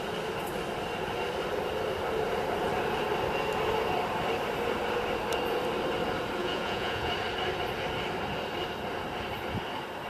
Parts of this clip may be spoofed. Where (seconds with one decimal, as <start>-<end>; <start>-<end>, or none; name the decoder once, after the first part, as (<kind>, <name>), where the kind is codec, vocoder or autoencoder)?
6.4-7.1 (vocoder, Vocos)